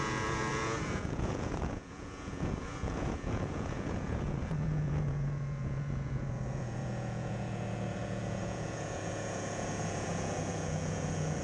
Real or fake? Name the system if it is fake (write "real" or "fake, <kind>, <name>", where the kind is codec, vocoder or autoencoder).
fake, vocoder, Vocos